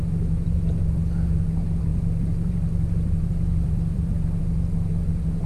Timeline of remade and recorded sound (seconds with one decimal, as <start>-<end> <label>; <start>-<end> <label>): 0.0-1.9 recorded; 1.9-4.4 remade; 4.4-5.5 recorded